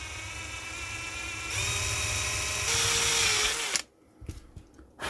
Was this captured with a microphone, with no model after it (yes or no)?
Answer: yes